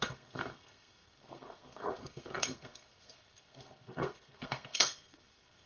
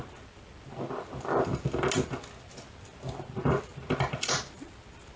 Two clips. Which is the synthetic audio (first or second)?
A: first